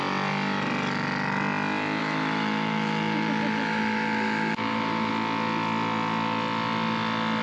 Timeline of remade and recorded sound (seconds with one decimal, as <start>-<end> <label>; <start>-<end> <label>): 0.0-2.0 recorded; 2.0-5.1 remade; 5.1-7.4 recorded